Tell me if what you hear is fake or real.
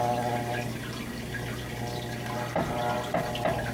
real